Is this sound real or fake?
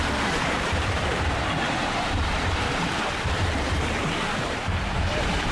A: fake